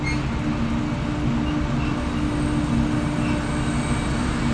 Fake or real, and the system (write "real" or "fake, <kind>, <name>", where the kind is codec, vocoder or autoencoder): real